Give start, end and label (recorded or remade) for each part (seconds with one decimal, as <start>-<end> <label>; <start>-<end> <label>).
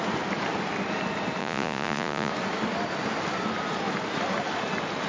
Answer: 0.0-1.4 recorded; 1.4-2.3 remade; 2.3-5.1 recorded